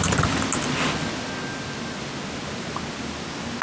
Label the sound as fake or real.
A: real